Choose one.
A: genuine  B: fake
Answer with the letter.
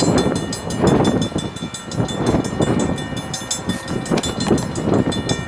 A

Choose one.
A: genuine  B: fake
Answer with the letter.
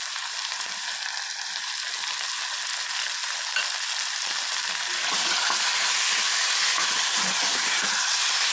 A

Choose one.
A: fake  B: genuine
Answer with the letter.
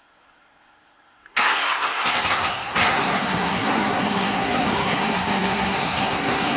A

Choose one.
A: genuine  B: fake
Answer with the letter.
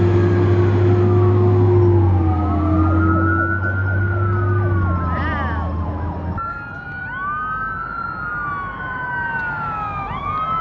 A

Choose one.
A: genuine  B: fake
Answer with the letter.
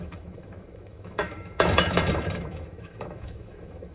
B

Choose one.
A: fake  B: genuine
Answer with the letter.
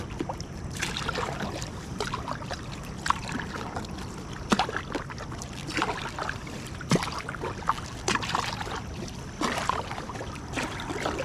B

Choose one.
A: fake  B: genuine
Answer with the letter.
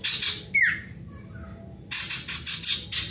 B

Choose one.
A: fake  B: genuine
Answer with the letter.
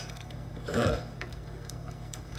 A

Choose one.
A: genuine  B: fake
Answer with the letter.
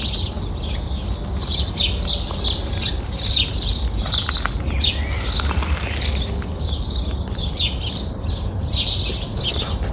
A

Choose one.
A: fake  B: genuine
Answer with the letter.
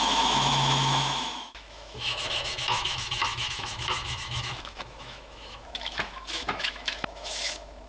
A